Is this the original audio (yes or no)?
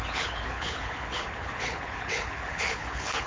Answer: no